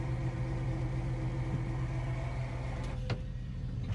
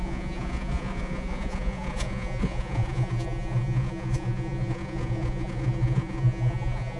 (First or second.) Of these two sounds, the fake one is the second